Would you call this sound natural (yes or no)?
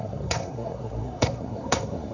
no